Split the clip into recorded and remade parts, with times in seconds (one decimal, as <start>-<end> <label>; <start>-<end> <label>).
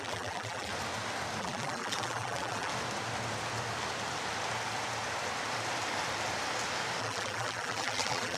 0.0-0.7 remade; 0.7-1.4 recorded; 1.4-2.7 remade; 2.7-7.0 recorded; 7.0-8.4 remade